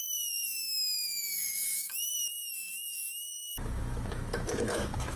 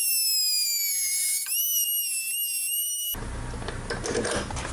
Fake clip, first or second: first